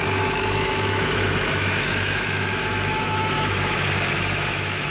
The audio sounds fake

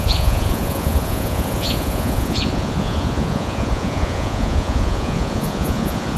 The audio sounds fake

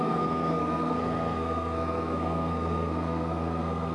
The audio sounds fake